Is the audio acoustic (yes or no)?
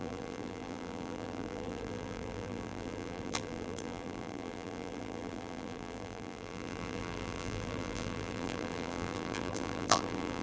no